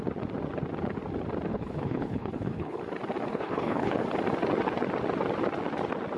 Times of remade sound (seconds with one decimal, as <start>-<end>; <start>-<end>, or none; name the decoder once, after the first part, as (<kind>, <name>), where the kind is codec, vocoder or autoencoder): 1.5-2.8 (codec, HILCodec); 3.3-4.0